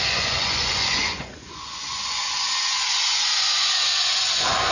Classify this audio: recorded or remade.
remade